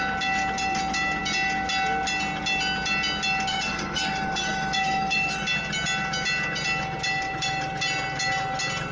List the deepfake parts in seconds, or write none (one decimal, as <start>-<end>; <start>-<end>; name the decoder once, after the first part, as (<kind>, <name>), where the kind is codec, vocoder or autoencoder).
3.5-5.4 (autoencoder, DAC-VAE)

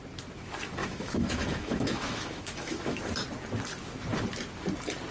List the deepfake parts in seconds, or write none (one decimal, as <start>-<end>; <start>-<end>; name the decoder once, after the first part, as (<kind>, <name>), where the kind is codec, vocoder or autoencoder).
0.8-3.0 (autoencoder, DAC-VAE)

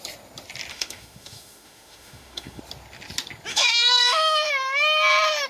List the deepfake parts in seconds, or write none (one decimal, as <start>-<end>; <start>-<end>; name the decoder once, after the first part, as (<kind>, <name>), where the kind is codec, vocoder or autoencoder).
0.7-2.6 (autoencoder, DAC-VAE); 3.5-4.5

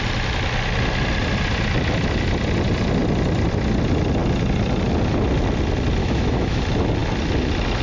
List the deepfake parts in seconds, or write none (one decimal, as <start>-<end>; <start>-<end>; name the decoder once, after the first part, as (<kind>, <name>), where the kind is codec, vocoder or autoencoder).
6.0-6.6 (autoencoder, DAC-VAE)

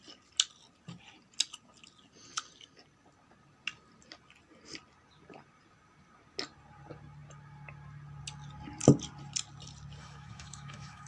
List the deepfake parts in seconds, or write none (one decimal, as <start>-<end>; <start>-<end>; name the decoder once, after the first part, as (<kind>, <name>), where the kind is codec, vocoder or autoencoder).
10.0-11.1 (autoencoder, DAC-VAE)

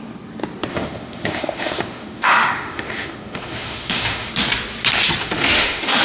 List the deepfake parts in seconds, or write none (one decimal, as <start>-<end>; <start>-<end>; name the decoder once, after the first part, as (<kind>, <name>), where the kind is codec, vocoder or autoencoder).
0.7-4.3 (autoencoder, DAC-VAE); 5.2-6.0

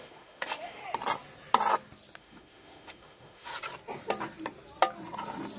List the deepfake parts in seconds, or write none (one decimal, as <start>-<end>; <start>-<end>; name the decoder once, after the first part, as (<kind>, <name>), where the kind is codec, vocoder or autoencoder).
0.0-0.8 (autoencoder, DAC-VAE); 2.2-3.5

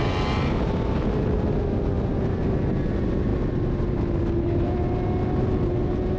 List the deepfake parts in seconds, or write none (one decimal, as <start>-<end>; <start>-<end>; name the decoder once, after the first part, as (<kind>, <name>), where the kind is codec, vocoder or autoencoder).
none